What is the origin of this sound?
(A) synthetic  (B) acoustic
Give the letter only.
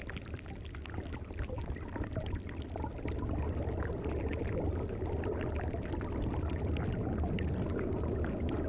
B